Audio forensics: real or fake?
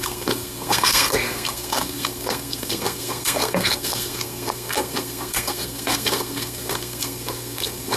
fake